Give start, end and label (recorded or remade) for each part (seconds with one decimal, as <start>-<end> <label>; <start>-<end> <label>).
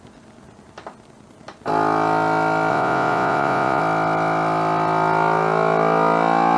0.0-2.7 recorded; 2.7-3.8 remade; 3.8-6.6 recorded